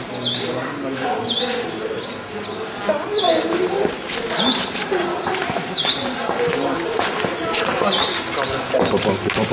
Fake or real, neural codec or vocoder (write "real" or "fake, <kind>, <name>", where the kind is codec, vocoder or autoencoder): real